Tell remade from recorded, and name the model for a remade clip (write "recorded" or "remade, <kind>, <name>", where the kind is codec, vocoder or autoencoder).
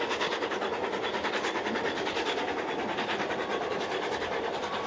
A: recorded